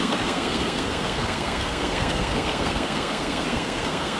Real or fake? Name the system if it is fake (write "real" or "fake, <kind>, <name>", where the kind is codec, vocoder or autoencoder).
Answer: fake, codec, SNAC